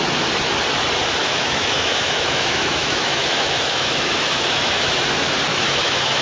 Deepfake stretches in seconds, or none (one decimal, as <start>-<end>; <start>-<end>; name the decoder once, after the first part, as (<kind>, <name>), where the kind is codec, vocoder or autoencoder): 1.2-4.9 (autoencoder, DAC-VAE); 5.5-6.2